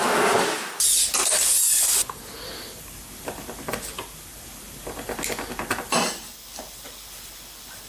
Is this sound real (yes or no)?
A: yes